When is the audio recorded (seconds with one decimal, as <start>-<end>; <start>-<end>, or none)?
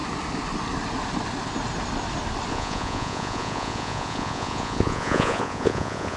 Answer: 0.0-2.5